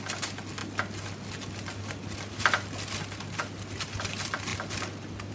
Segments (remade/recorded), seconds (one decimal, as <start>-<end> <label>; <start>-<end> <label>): 0.0-5.3 recorded